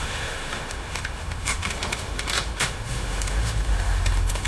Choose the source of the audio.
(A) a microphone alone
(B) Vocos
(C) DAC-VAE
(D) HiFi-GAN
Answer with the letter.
C